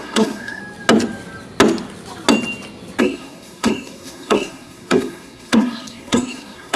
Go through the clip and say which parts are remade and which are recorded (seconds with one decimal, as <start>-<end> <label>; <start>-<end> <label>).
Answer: 0.0-0.6 remade; 0.6-3.0 recorded; 3.0-6.8 remade